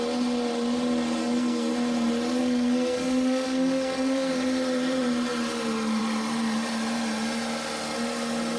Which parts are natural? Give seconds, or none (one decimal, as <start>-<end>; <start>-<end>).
0.0-1.2; 1.7-2.4; 4.3-8.6